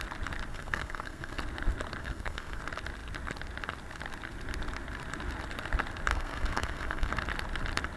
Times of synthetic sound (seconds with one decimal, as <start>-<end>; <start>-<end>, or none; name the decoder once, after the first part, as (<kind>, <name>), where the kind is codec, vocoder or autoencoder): 0.5-1.4 (codec, SNAC); 2.0-2.6; 6.1-7.1